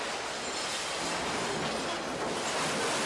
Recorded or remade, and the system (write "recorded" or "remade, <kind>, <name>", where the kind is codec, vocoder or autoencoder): recorded